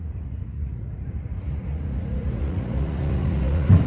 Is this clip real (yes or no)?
no